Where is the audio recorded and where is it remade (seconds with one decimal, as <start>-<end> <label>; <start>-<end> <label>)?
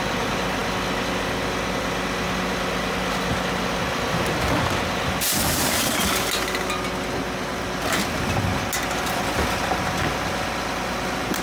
0.0-11.4 recorded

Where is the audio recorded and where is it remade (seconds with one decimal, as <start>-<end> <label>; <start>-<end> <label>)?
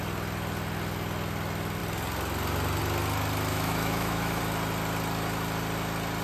0.0-3.5 recorded; 3.5-4.4 remade; 4.4-6.2 recorded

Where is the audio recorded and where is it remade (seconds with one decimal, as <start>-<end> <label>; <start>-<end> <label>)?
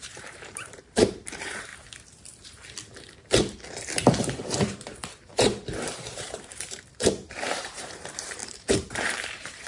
0.0-1.7 remade; 1.7-4.2 recorded; 4.2-9.7 remade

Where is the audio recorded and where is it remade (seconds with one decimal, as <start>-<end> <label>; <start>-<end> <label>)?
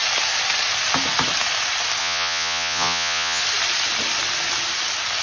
0.0-2.0 recorded; 2.0-3.4 remade; 3.4-5.2 recorded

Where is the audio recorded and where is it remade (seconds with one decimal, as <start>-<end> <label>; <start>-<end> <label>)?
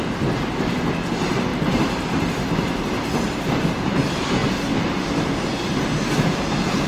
0.0-1.5 recorded; 1.5-3.5 remade; 3.5-6.9 recorded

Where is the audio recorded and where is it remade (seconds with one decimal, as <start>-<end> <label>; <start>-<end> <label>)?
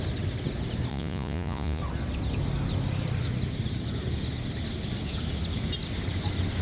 0.0-0.9 recorded; 0.9-1.8 remade; 1.8-6.6 recorded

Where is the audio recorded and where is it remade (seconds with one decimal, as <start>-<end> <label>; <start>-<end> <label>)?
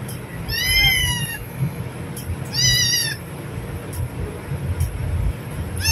0.0-1.0 recorded; 1.0-1.8 remade; 1.8-5.9 recorded